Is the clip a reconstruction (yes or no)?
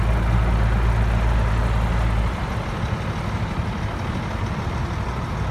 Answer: no